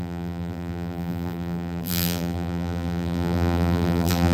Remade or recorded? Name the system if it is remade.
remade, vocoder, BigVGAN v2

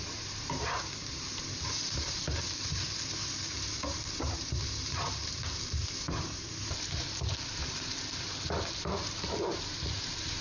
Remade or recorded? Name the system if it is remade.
remade, vocoder, BigVGAN v2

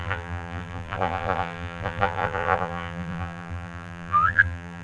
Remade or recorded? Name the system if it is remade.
remade, vocoder, BigVGAN v2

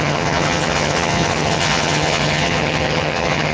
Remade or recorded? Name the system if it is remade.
remade, vocoder, HiFi-GAN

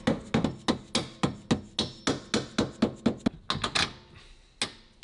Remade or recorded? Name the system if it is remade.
recorded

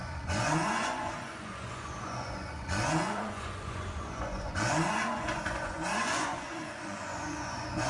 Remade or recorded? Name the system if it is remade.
remade, vocoder, Vocos